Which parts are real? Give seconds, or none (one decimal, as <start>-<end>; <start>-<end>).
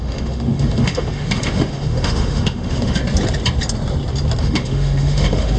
3.0-4.4